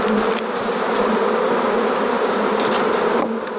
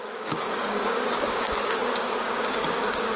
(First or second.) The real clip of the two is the first